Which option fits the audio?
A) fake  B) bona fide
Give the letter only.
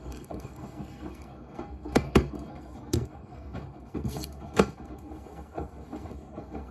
A